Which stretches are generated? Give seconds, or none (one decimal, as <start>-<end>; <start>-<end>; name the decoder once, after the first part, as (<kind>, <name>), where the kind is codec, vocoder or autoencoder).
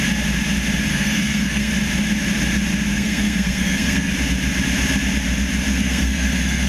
0.9-1.7 (codec, SNAC); 2.9-4.1; 5.8-6.7